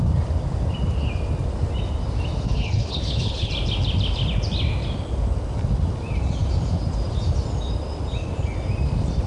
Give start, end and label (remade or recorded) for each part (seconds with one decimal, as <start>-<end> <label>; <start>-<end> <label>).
0.0-2.5 recorded; 2.5-3.5 remade; 3.5-9.3 recorded